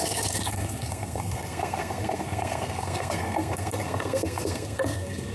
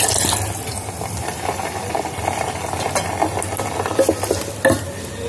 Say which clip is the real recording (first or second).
second